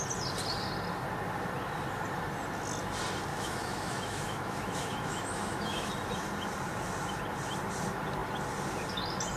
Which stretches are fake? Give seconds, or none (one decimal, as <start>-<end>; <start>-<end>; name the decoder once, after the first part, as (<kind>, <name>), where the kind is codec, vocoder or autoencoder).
3.3-5.9 (autoencoder, DAC-VAE)